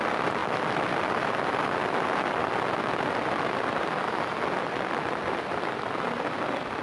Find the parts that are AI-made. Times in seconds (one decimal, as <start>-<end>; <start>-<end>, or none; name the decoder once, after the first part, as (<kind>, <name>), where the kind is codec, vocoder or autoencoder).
0.4-1.3 (vocoder, BigVGAN v2)